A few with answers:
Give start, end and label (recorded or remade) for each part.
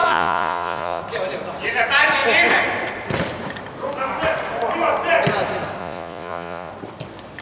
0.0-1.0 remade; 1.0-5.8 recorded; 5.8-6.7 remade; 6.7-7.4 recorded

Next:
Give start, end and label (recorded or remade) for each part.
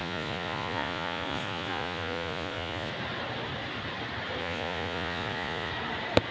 0.0-2.9 remade; 2.9-4.4 recorded; 4.4-5.7 remade; 5.7-6.3 recorded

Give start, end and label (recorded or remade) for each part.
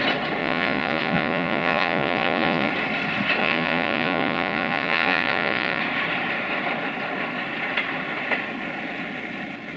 0.0-0.4 recorded; 0.4-2.7 remade; 2.7-3.4 recorded; 3.4-5.8 remade; 5.8-9.8 recorded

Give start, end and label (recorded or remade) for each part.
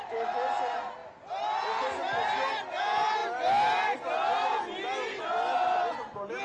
0.0-6.4 recorded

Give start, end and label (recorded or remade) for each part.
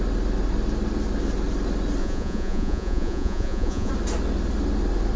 0.0-2.0 recorded; 2.0-3.9 remade; 3.9-5.2 recorded